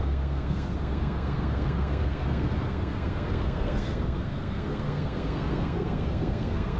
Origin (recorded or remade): remade